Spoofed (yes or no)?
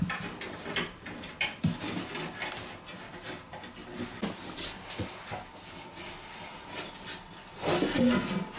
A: no